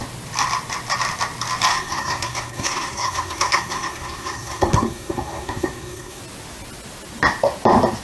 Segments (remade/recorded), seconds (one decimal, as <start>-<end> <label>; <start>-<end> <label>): 0.0-1.7 recorded; 1.7-6.2 remade; 6.2-8.0 recorded